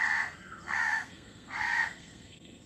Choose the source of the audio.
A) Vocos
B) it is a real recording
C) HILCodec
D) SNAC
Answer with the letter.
D